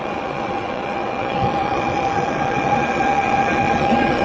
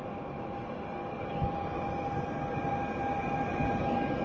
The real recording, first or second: second